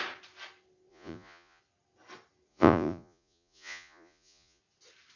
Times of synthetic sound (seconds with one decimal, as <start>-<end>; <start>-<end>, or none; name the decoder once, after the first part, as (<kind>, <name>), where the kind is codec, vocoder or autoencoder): 0.9-1.6 (vocoder, Vocos); 2.5-4.6